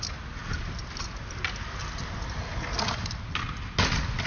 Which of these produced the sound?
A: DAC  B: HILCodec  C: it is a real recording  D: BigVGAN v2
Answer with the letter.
C